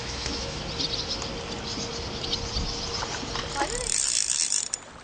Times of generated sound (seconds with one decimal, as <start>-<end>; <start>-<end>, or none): 0.0-0.6

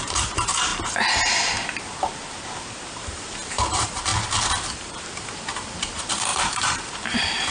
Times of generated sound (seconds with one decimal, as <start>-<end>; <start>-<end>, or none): 0.0-0.7; 3.0-4.1; 4.7-7.5